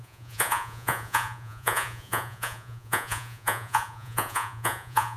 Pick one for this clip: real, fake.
fake